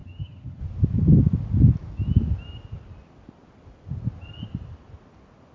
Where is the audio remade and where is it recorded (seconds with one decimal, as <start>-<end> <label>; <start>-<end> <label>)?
0.0-0.6 remade; 0.6-5.5 recorded